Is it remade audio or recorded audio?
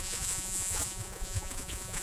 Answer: remade